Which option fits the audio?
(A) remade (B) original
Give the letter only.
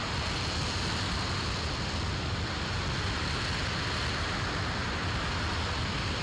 B